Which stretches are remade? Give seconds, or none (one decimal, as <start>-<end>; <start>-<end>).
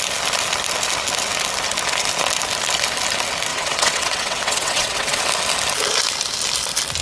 3.5-5.2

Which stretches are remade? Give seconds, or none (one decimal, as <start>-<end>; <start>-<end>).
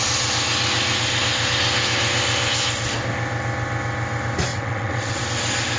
4.5-5.2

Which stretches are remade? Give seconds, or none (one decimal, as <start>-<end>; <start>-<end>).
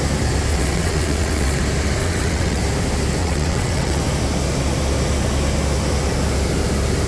0.5-1.6; 2.0-2.6; 3.2-4.0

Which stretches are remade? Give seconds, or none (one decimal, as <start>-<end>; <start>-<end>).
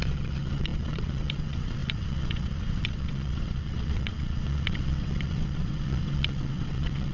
0.0-7.1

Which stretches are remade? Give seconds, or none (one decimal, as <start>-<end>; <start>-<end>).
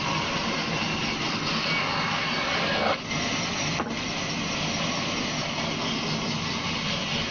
none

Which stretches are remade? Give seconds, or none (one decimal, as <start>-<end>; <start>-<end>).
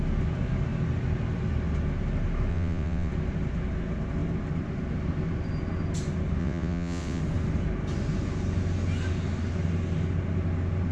2.5-3.1; 6.4-7.2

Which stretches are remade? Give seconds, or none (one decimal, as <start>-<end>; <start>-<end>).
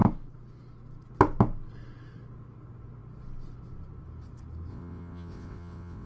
4.7-6.1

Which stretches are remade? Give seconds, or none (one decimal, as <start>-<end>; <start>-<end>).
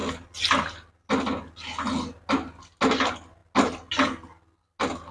none